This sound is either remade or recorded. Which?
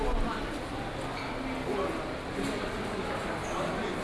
recorded